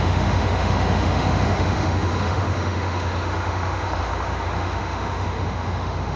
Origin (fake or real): fake